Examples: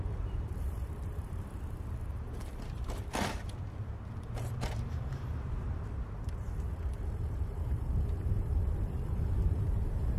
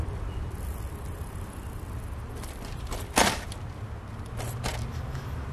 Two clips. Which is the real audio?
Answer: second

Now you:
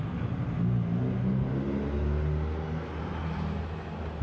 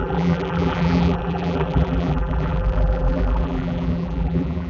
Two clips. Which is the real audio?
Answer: first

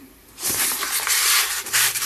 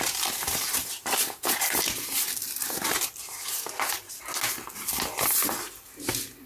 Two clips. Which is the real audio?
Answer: second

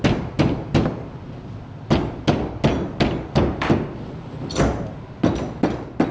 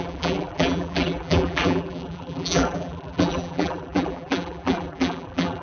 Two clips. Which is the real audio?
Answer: first